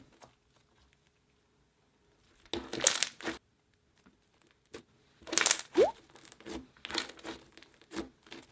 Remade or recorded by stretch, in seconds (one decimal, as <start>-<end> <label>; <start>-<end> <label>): 0.0-8.5 recorded